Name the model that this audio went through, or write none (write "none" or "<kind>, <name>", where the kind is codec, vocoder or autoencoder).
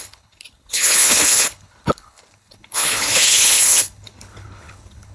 codec, HILCodec